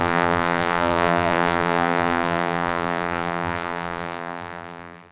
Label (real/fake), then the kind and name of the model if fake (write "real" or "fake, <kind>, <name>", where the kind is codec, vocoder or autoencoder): fake, vocoder, BigVGAN v2